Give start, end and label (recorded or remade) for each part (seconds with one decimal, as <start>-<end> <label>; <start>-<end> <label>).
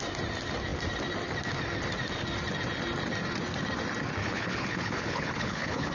0.0-4.2 recorded; 4.2-5.9 remade